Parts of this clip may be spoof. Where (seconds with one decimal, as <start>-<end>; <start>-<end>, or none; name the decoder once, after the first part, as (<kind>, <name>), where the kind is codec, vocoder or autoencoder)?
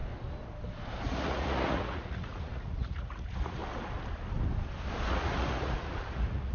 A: 1.0-3.6 (vocoder, Vocos); 5.1-6.5